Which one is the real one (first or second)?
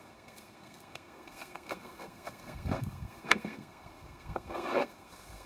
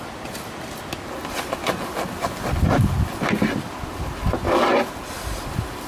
second